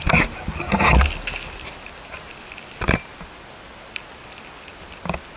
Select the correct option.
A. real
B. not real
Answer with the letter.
A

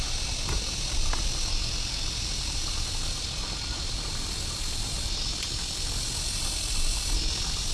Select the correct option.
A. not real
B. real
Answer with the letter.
B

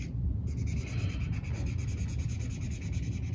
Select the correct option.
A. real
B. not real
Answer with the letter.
A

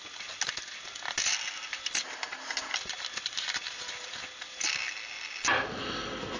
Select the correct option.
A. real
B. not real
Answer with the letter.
A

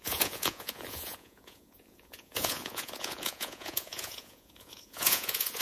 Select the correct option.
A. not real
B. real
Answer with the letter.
A